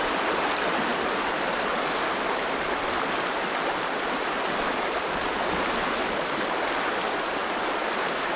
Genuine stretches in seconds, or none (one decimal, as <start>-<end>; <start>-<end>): 0.0-8.4